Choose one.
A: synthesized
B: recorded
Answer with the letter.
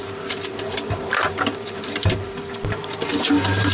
A